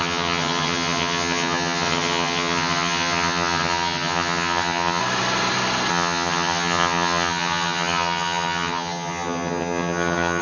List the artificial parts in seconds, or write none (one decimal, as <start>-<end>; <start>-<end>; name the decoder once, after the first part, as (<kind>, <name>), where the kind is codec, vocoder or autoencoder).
0.0-5.0 (vocoder, HiFi-GAN); 5.9-10.4